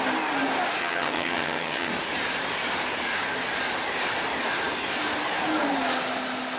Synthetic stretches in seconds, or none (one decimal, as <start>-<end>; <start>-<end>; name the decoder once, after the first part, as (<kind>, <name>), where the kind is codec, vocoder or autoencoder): 0.8-1.9 (vocoder, HiFi-GAN)